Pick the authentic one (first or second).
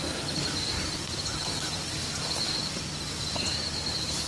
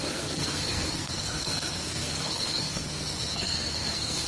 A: first